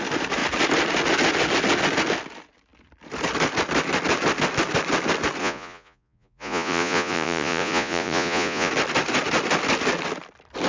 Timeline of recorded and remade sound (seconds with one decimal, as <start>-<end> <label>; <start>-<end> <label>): 0.0-5.4 recorded; 5.4-8.7 remade; 8.7-10.7 recorded